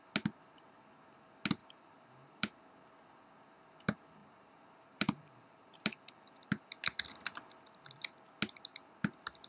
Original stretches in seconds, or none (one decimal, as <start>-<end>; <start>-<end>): 0.0-1.6; 2.6-4.2; 6.7-9.5